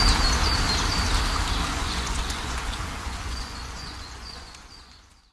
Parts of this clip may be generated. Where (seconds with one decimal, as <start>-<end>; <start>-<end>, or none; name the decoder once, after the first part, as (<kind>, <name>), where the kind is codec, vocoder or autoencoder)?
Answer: 1.7-5.3 (vocoder, Vocos)